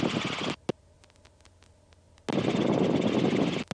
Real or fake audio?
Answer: real